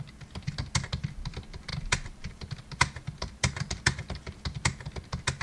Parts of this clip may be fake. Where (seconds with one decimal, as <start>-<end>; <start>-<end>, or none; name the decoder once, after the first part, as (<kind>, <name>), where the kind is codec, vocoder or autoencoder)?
1.7-4.9 (vocoder, BigVGAN v2)